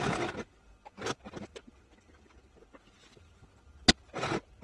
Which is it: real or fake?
real